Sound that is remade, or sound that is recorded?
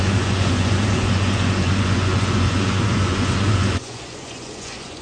remade